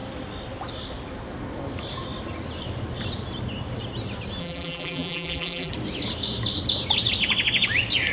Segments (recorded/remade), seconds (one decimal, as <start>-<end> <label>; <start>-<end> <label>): 0.0-4.4 recorded; 4.4-5.7 remade; 5.7-8.1 recorded

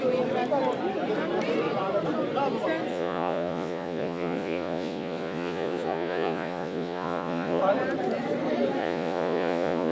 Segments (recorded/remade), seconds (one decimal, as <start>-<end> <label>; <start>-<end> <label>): 0.0-2.9 recorded; 2.9-7.6 remade; 7.6-8.8 recorded; 8.8-9.9 remade